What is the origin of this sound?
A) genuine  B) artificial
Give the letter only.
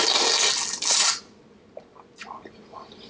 A